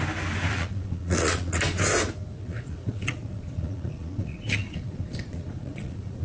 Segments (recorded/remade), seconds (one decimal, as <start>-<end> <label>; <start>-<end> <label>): 0.0-0.5 recorded; 0.5-1.6 remade; 1.6-2.4 recorded; 2.4-6.2 remade